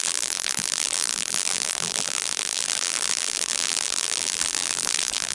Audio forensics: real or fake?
fake